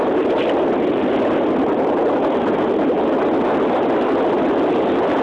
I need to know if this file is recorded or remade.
recorded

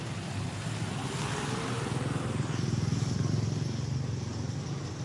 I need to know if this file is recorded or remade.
recorded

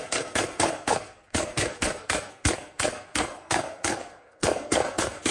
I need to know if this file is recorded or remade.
remade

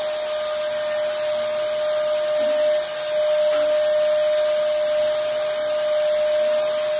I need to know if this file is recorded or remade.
recorded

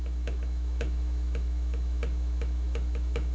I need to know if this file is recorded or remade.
remade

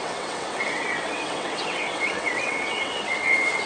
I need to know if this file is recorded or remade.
remade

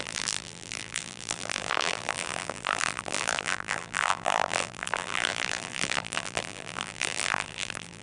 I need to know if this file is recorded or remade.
remade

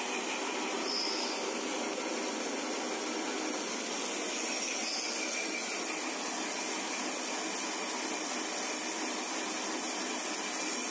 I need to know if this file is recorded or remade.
recorded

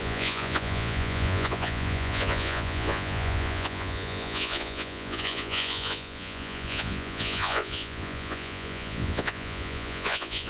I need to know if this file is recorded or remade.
remade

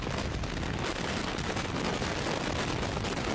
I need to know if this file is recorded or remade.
recorded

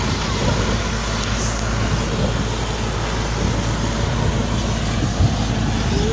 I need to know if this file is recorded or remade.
recorded